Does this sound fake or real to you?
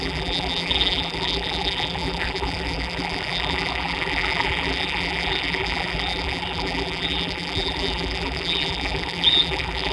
fake